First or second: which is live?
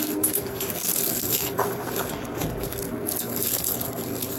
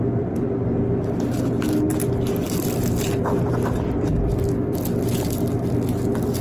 second